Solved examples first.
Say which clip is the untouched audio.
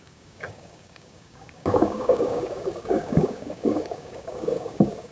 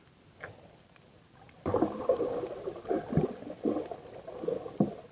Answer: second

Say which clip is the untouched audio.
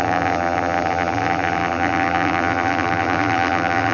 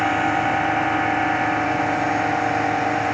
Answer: second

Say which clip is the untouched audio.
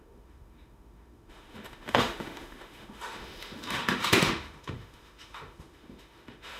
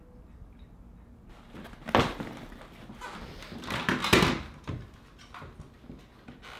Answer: second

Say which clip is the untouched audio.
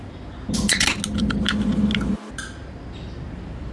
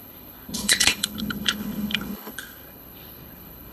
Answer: first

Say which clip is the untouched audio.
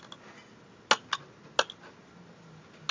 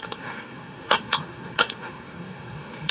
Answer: first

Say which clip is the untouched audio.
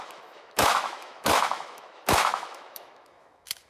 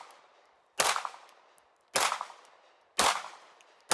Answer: second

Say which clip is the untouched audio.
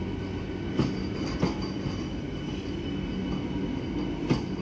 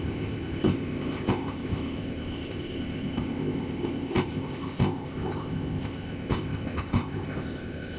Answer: first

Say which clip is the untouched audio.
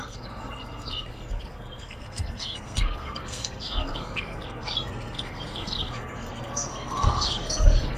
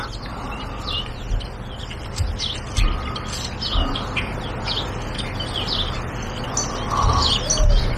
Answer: second